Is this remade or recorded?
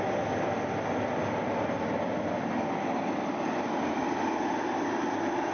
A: recorded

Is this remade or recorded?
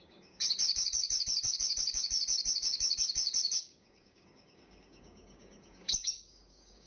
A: remade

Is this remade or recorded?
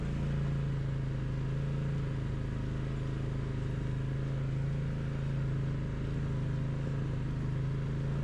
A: recorded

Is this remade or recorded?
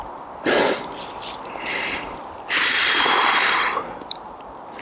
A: remade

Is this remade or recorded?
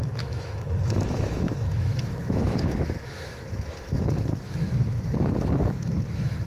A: remade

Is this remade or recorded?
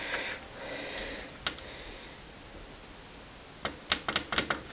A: recorded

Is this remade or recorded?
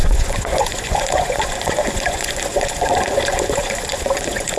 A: remade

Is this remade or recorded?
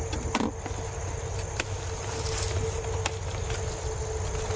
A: recorded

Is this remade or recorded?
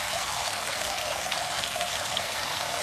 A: remade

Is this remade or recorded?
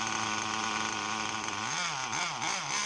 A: recorded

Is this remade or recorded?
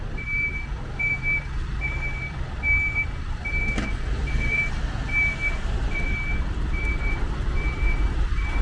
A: remade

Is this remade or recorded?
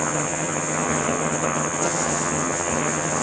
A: remade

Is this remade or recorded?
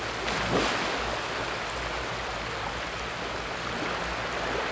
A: recorded